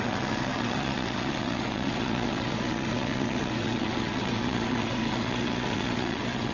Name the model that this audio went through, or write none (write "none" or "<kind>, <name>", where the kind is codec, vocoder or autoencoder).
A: vocoder, WaveNeXt